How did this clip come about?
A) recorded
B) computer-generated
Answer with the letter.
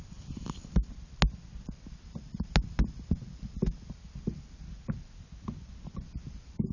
A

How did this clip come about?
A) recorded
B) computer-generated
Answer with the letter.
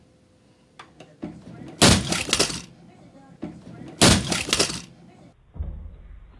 A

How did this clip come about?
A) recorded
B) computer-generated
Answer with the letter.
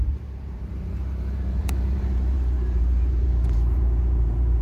B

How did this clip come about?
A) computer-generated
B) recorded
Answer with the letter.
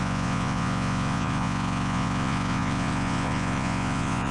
A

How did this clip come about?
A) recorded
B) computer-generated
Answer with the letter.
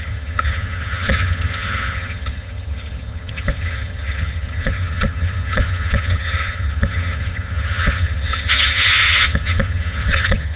B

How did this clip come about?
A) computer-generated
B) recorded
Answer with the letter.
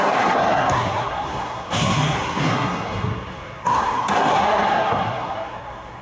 A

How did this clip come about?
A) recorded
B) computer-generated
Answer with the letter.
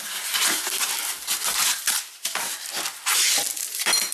A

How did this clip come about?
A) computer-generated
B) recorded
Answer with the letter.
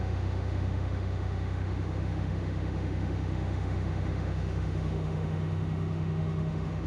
A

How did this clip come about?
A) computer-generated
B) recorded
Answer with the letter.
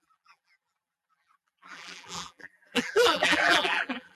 A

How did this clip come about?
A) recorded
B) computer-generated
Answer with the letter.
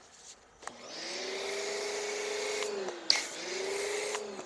A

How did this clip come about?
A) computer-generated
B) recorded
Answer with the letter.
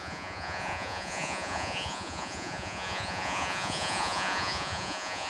A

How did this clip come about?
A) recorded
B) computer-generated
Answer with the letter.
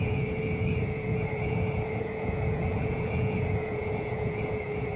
B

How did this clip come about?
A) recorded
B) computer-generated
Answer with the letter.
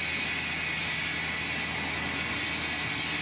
A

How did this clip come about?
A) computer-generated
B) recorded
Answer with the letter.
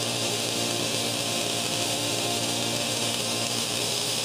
A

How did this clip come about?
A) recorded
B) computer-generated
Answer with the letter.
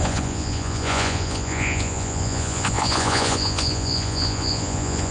B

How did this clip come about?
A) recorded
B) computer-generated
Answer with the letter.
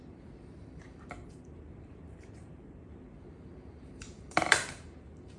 B